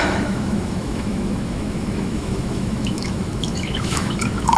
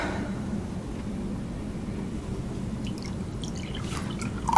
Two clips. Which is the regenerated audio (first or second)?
first